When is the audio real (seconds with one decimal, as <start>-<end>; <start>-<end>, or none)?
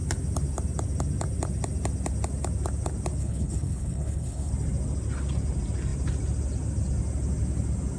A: 0.0-3.2; 4.5-8.0